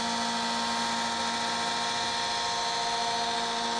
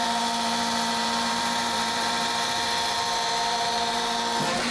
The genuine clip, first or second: first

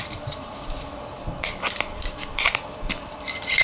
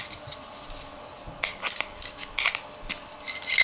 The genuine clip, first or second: second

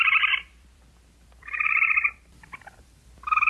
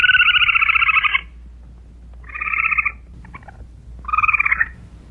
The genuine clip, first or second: second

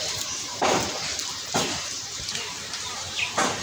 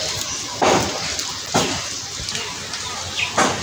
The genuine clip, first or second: second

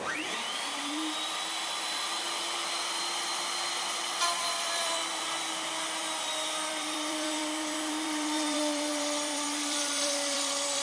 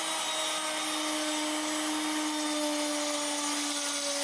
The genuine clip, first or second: second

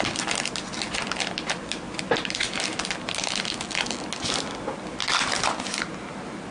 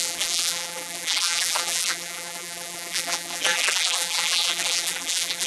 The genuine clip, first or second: first